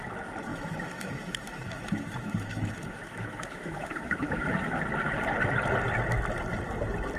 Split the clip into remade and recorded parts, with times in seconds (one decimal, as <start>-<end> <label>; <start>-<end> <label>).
0.0-0.5 recorded; 0.5-4.8 remade; 4.8-7.2 recorded